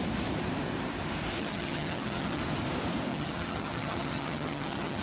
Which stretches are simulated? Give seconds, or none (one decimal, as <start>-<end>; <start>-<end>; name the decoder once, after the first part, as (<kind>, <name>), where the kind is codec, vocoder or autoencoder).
1.4-2.4 (vocoder, HiFi-GAN); 3.1-5.0

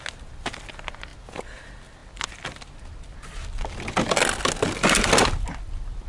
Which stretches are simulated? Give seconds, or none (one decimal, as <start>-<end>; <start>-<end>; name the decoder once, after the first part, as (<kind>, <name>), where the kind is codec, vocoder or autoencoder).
none

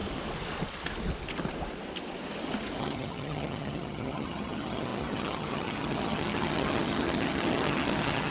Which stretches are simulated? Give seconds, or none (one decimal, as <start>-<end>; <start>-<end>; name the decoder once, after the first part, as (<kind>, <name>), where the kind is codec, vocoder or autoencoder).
2.8-8.3 (vocoder, HiFi-GAN)

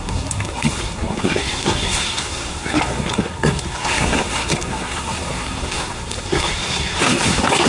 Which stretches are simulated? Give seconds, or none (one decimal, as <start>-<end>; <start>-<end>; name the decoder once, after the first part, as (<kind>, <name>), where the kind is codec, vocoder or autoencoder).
0.0-7.7 (codec, SNAC)

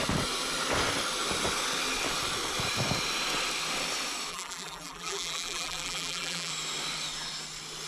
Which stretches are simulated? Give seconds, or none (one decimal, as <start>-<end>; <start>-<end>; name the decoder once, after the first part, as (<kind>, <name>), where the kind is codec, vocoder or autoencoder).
4.3-6.5 (vocoder, BigVGAN v2)

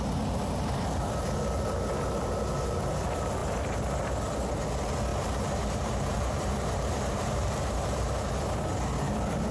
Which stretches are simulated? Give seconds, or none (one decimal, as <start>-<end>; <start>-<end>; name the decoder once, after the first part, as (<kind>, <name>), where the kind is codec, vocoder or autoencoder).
5.1-8.3 (vocoder, BigVGAN v2)